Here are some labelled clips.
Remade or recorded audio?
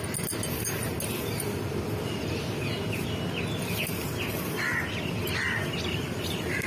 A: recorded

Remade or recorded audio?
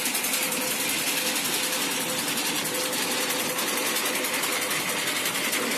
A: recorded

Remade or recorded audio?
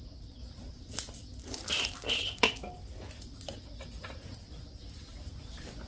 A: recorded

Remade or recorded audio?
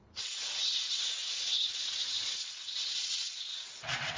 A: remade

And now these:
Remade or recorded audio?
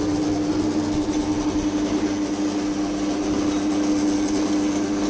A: recorded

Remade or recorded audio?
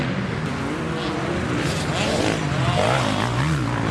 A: recorded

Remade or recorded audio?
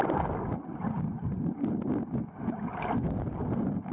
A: recorded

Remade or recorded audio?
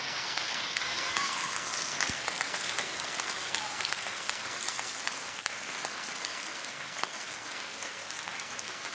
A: remade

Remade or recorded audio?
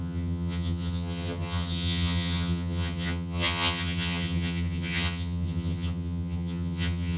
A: remade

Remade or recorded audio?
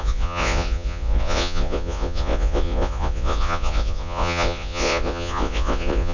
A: remade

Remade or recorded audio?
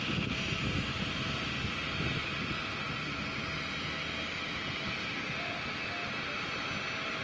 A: recorded